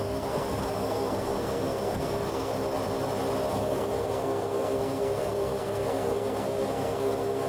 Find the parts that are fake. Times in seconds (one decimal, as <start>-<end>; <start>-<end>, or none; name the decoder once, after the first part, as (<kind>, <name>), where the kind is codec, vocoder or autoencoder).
0.0-2.5 (codec, SNAC); 3.5-7.5